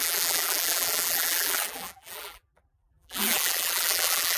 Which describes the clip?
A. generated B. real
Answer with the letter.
A